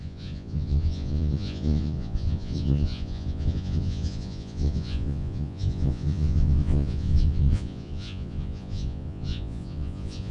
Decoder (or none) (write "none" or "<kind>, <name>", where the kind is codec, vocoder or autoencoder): vocoder, Vocos